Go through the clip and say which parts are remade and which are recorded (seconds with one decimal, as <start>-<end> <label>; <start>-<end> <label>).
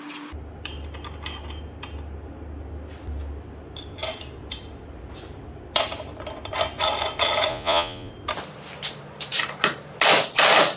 0.0-7.5 recorded; 7.5-8.1 remade; 8.1-10.8 recorded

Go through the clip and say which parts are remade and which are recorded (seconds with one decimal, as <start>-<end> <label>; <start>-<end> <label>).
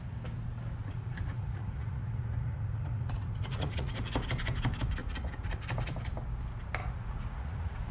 0.0-0.8 recorded; 0.8-4.0 remade; 4.0-5.0 recorded; 5.0-5.6 remade; 5.6-6.8 recorded; 6.8-7.9 remade